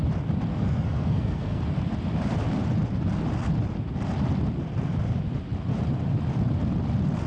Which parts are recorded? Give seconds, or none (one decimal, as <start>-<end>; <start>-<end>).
0.0-0.5; 1.6-7.3